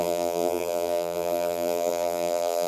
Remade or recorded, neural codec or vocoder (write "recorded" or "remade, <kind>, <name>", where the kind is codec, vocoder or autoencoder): remade, vocoder, BigVGAN v2